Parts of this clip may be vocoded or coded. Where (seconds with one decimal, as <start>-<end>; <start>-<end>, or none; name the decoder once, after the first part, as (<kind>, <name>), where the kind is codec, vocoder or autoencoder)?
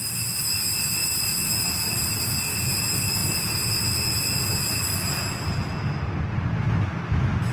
none